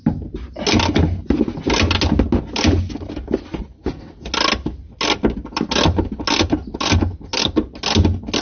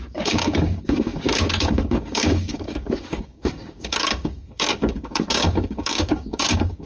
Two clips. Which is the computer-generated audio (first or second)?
second